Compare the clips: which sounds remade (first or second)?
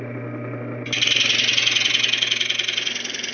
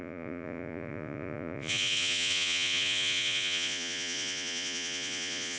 second